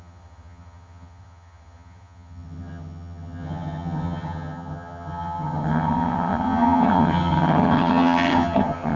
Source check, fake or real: fake